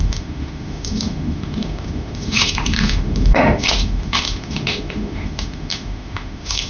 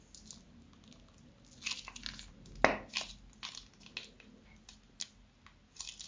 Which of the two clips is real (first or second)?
second